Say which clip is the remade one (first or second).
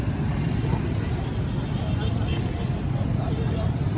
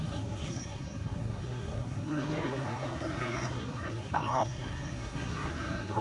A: second